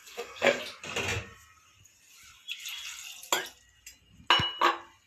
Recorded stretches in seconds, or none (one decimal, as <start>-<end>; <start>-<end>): 0.6-5.1

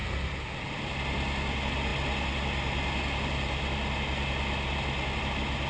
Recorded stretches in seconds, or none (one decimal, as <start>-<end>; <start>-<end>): 0.9-5.7

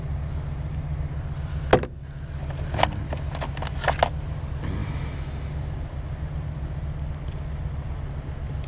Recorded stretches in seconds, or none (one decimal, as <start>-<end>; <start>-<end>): 0.0-4.8; 5.5-8.7

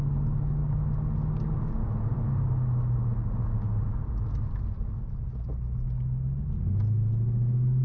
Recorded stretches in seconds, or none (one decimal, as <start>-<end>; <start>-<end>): 0.0-7.8

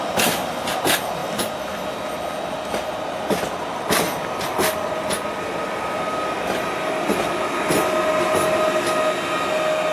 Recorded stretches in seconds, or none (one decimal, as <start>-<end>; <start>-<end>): 0.0-9.9

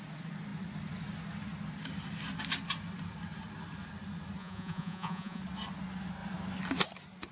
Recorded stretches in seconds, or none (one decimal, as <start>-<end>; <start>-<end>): 0.0-4.4; 5.4-7.3

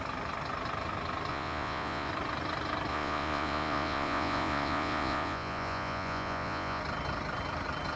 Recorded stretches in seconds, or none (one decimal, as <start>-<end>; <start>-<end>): 0.0-1.3; 2.1-2.9; 6.8-8.0

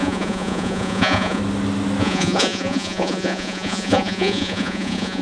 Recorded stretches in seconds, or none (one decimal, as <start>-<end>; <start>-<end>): 1.4-2.0